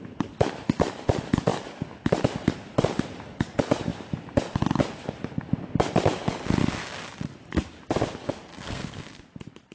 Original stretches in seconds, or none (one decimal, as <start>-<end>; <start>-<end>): 0.0-8.5; 9.2-9.7